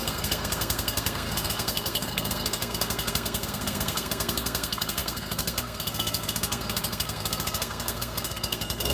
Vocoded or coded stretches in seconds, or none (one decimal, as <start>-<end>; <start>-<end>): 0.0-8.9